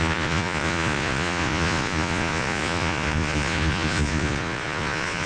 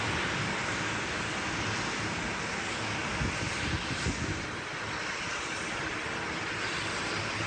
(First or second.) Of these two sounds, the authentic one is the second